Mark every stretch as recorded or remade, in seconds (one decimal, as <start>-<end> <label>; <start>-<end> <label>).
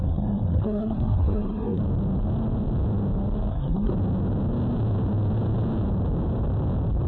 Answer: 0.0-1.8 remade; 1.8-3.5 recorded; 3.5-3.9 remade; 3.9-7.1 recorded